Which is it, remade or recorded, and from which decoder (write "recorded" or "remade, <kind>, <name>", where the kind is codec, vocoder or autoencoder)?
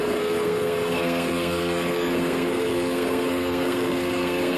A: remade, codec, SNAC